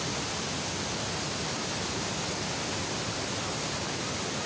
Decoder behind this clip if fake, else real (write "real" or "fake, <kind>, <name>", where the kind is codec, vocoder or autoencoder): real